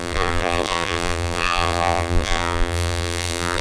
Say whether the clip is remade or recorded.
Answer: remade